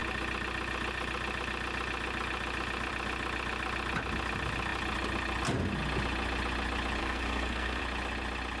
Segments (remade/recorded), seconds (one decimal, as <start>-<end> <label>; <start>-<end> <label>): 0.0-7.0 recorded; 7.0-7.8 remade; 7.8-8.6 recorded